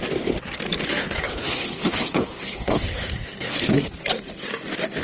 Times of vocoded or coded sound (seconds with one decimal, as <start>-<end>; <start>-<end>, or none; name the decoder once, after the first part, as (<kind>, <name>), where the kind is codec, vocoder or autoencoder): 1.0-4.0 (codec, HILCodec)